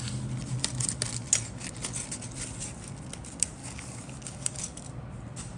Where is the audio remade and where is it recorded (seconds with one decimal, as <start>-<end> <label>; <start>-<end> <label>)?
0.0-3.6 recorded; 3.6-4.6 remade; 4.6-5.6 recorded